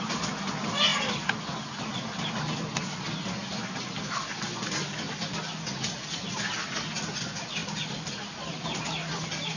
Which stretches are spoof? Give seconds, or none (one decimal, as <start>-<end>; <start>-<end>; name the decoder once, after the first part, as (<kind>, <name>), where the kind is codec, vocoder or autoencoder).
none